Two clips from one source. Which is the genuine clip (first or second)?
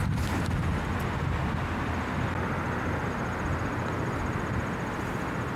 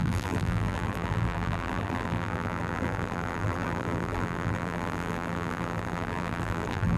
first